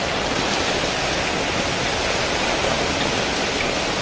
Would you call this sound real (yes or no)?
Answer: yes